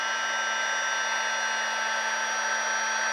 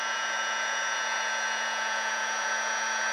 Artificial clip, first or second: second